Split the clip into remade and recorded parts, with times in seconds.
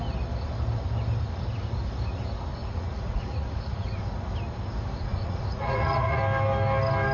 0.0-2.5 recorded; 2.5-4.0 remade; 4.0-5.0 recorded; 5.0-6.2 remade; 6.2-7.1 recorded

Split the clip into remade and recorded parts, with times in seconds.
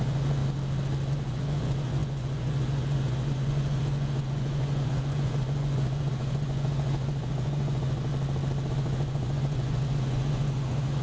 0.0-0.4 remade; 0.4-1.1 recorded; 1.1-8.1 remade; 8.1-8.7 recorded; 8.7-11.0 remade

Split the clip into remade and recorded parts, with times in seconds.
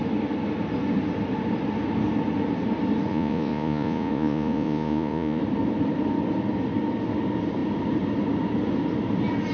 0.0-3.1 recorded; 3.1-5.4 remade; 5.4-9.5 recorded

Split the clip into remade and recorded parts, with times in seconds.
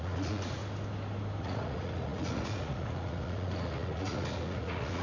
0.0-0.6 remade; 0.6-1.4 recorded; 1.4-5.0 remade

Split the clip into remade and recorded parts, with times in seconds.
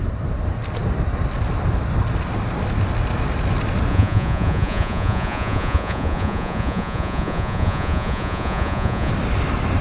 0.0-3.9 recorded; 3.9-9.1 remade; 9.1-9.8 recorded